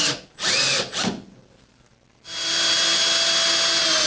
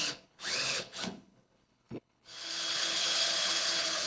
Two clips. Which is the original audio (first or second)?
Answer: first